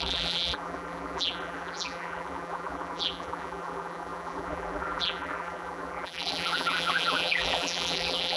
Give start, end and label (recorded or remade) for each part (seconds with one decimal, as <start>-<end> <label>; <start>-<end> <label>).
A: 0.0-8.4 remade